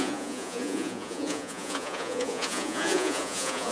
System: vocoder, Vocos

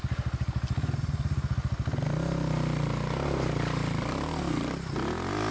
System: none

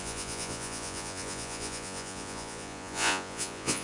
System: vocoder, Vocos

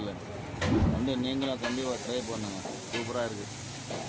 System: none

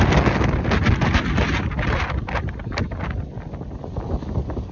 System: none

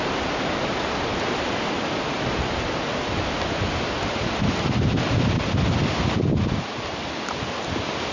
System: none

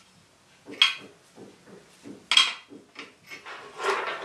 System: none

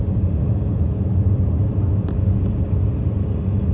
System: none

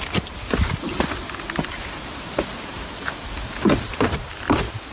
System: none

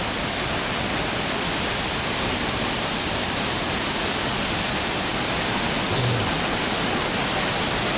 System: none